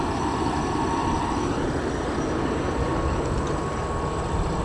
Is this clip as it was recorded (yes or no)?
yes